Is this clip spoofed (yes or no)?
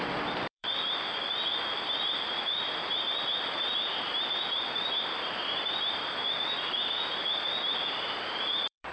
yes